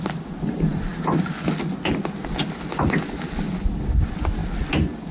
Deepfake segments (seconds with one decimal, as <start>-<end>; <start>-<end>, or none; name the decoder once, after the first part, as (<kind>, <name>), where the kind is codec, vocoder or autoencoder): none